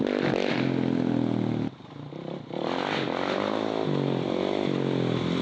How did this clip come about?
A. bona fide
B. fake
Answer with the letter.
A